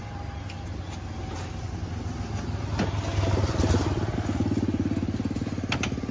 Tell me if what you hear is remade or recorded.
recorded